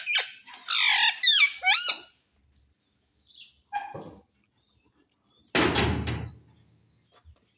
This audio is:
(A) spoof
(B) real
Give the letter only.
B